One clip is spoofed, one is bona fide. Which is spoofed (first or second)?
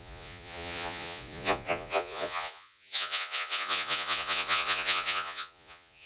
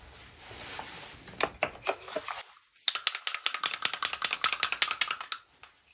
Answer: first